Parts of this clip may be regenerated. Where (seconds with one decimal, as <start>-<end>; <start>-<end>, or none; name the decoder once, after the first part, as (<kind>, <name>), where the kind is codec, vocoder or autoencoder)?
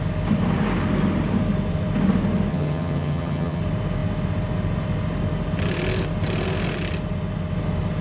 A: 2.5-3.6 (vocoder, HiFi-GAN)